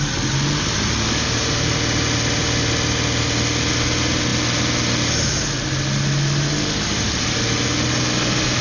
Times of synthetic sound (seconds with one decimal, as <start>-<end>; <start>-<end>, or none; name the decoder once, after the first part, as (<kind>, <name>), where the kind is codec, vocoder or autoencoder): none